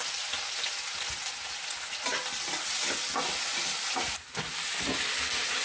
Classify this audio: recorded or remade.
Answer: recorded